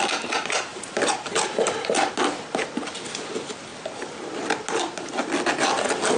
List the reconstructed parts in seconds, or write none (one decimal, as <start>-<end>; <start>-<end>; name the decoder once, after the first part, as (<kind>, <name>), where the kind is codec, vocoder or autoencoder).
0.7-2.1 (vocoder, BigVGAN v2)